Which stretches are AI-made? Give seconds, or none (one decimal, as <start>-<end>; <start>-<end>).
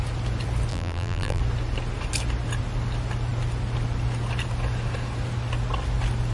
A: 0.7-1.4